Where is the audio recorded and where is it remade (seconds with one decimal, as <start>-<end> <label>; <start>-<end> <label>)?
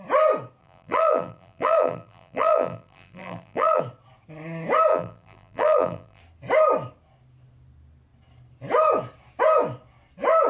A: 0.0-0.6 recorded; 0.6-3.8 remade; 3.8-4.9 recorded; 4.9-6.2 remade; 6.2-10.5 recorded